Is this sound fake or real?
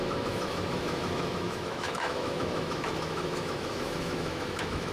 fake